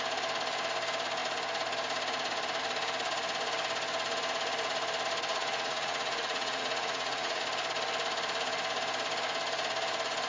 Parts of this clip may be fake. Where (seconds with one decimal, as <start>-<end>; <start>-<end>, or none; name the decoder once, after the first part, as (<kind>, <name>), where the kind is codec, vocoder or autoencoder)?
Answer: 5.3-7.4 (vocoder, Vocos)